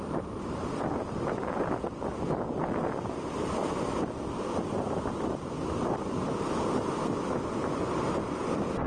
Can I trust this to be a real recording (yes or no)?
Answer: no